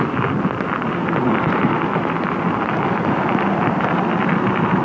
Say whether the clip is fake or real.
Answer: real